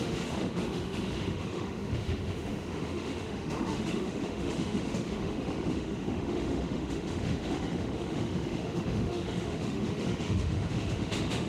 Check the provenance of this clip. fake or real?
fake